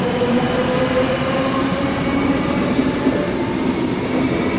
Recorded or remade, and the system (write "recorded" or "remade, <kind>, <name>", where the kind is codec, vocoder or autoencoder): remade, vocoder, BigVGAN v2